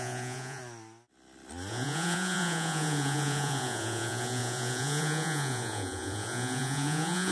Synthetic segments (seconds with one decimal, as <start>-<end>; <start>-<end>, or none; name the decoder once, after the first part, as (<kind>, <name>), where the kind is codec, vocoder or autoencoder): 0.0-0.6 (vocoder, Vocos); 1.7-7.3